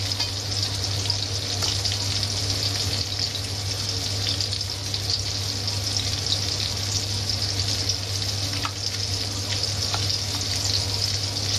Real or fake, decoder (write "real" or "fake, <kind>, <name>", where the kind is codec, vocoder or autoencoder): real